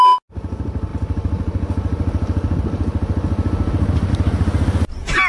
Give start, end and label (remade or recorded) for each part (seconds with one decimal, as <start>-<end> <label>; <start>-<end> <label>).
0.0-5.3 recorded